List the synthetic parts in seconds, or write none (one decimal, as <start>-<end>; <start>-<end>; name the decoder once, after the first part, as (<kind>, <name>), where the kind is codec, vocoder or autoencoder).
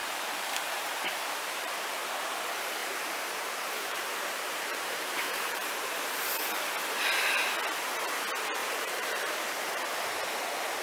0.0-2.0 (vocoder, BigVGAN v2); 2.8-6.3; 8.6-9.8